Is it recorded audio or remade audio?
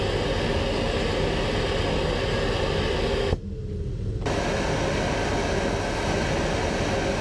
recorded